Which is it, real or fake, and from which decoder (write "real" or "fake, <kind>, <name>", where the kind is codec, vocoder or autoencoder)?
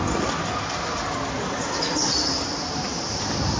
real